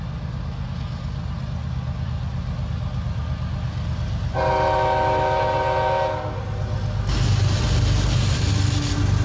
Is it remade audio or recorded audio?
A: recorded